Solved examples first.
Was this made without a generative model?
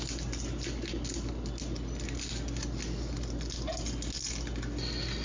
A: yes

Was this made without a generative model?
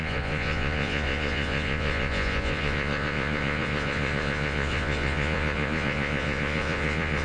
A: no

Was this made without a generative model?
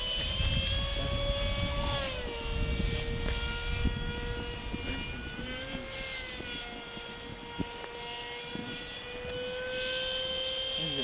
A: yes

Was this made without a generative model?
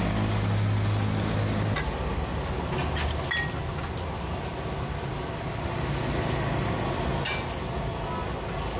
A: yes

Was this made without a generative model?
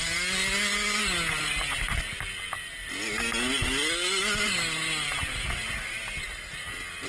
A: yes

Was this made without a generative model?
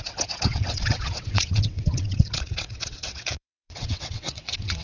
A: no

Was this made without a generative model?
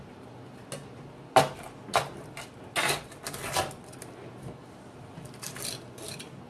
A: yes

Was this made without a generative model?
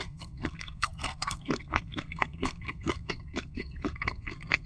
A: no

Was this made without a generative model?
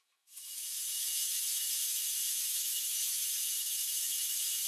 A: no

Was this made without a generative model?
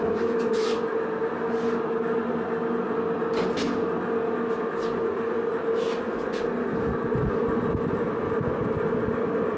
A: yes